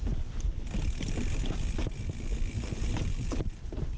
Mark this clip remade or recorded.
recorded